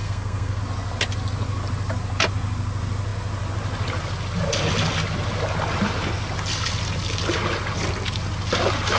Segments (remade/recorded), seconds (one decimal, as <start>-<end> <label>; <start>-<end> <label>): 0.0-0.6 remade; 0.6-9.0 recorded